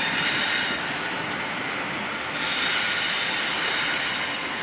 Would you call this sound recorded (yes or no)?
yes